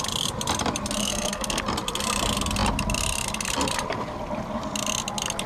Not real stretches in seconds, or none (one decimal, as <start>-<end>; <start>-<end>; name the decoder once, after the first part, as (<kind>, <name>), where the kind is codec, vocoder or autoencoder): 1.0-1.6 (codec, SNAC)